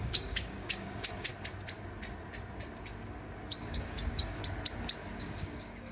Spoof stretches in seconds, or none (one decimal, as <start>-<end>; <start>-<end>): 0.0-1.3; 3.6-4.4; 5.2-5.9